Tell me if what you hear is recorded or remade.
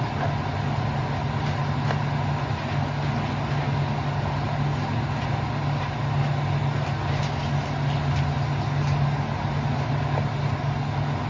recorded